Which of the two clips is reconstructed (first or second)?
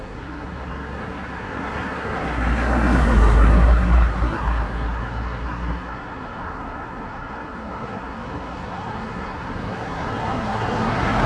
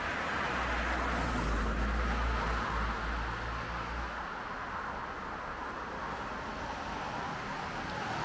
first